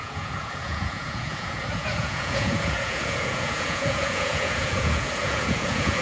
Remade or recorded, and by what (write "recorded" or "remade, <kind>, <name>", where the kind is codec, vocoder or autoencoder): remade, vocoder, Vocos